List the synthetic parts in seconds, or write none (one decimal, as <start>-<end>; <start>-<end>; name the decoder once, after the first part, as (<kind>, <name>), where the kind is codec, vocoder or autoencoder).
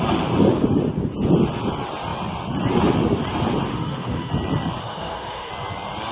3.7-4.3 (autoencoder, DAC-VAE); 4.8-5.5